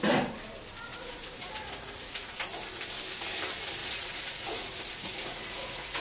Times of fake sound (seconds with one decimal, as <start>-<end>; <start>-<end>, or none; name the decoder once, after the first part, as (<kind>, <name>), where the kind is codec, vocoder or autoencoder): 0.9-2.4 (vocoder, Vocos); 3.8-6.0